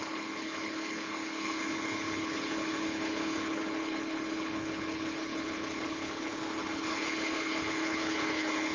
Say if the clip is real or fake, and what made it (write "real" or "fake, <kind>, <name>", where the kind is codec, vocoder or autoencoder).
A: fake, codec, HILCodec